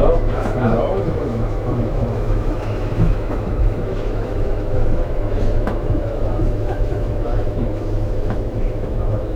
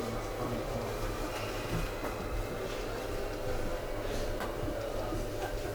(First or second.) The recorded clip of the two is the second